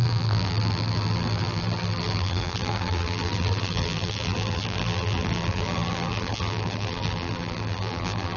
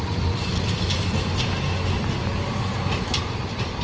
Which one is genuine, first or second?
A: second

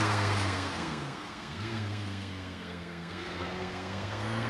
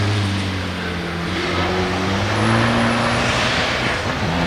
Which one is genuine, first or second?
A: second